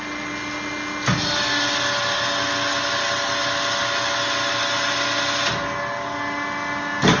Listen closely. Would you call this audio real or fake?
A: real